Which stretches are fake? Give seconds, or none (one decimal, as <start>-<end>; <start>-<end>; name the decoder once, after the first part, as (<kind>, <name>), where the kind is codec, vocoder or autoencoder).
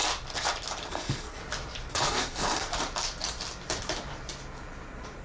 0.9-1.4 (codec, SNAC); 1.9-2.7